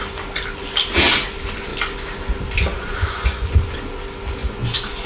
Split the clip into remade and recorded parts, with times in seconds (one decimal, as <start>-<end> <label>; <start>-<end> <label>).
0.0-2.7 recorded; 2.7-3.5 remade; 3.5-4.4 recorded; 4.4-5.1 remade